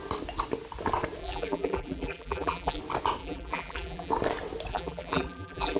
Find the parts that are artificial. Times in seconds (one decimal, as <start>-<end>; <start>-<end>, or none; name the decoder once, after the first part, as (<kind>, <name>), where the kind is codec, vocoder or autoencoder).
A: 1.2-2.8 (vocoder, BigVGAN v2); 3.2-4.1; 4.7-5.8